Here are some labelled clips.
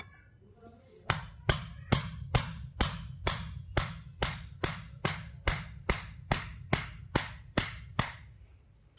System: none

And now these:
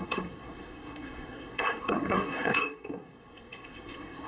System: codec, SNAC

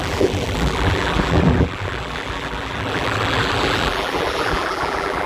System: vocoder, BigVGAN v2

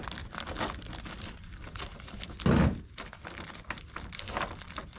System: none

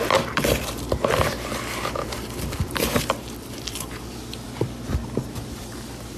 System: vocoder, BigVGAN v2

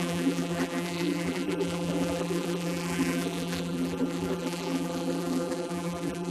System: vocoder, BigVGAN v2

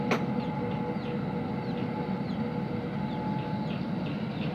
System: none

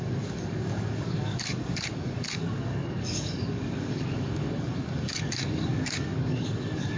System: codec, DAC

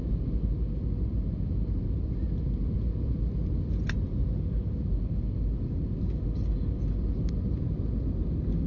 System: none